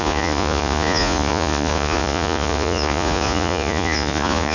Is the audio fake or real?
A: fake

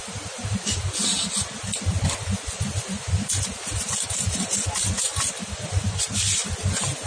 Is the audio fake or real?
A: real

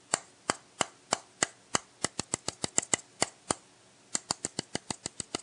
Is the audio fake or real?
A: real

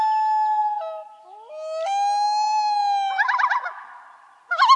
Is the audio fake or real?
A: real